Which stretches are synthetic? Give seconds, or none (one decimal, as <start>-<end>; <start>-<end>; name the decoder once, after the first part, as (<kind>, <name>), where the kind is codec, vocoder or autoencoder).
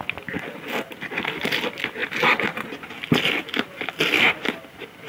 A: none